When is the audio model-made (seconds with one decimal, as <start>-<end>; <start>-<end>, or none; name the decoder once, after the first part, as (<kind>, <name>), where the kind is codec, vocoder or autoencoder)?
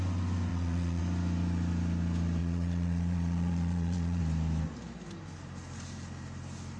0.5-1.0 (vocoder, Vocos); 2.4-4.2